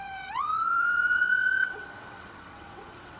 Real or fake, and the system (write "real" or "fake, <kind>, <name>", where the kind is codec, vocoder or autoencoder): fake, vocoder, WaveNeXt